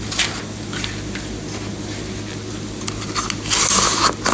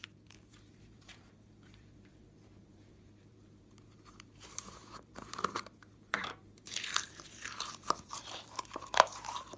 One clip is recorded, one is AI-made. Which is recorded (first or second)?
first